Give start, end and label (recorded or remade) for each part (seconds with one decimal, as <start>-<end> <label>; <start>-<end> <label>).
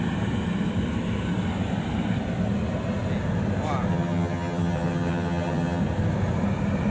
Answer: 0.0-3.9 recorded; 3.9-5.8 remade; 5.8-6.9 recorded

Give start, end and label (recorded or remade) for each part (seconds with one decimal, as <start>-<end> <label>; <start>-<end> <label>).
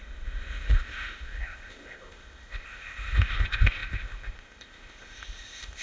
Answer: 0.0-5.8 remade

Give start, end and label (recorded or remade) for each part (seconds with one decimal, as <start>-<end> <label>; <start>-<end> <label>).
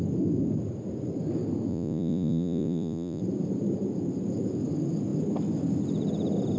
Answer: 0.0-1.7 recorded; 1.7-3.2 remade; 3.2-6.6 recorded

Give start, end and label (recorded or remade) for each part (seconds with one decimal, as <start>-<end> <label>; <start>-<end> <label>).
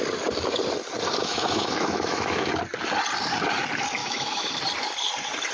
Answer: 0.0-1.2 recorded; 1.2-2.5 remade; 2.5-4.0 recorded; 4.0-4.5 remade; 4.5-5.5 recorded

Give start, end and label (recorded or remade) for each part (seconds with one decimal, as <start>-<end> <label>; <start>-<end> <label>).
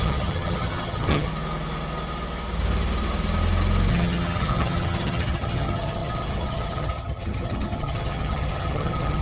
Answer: 0.0-1.3 remade; 1.3-3.9 recorded; 3.9-9.2 remade